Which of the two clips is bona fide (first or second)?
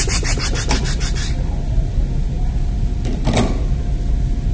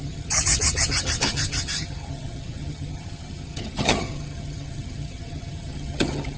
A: first